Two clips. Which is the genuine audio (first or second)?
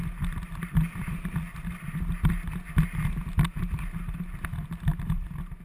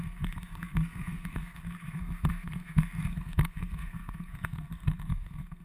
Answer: first